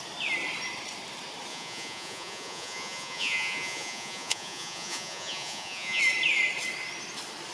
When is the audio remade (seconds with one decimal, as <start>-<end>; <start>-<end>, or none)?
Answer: 1.5-6.0